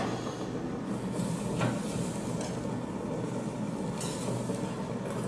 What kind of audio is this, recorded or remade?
recorded